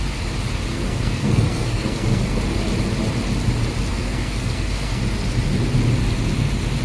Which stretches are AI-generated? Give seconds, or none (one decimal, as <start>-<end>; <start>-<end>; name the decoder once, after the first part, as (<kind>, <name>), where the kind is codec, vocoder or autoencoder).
0.7-2.4 (codec, SNAC); 3.9-5.0